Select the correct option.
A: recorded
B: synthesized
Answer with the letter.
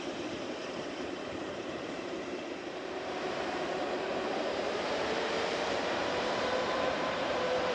B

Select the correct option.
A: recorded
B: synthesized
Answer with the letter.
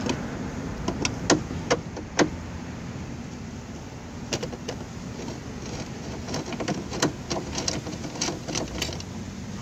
A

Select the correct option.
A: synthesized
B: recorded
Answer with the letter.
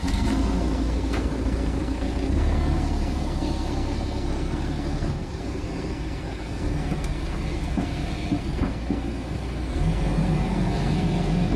A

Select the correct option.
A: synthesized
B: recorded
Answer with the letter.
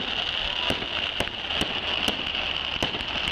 B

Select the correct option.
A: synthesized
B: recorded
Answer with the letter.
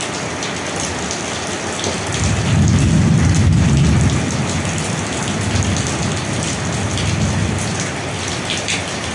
B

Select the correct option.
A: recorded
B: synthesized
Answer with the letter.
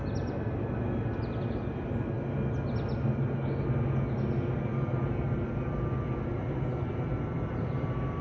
A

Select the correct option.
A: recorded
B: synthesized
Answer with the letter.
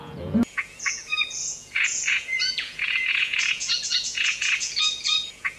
B